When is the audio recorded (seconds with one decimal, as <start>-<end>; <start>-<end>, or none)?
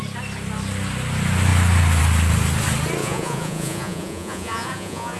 0.0-3.0